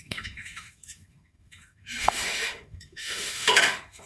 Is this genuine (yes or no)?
no